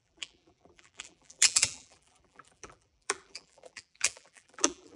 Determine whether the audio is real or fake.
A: fake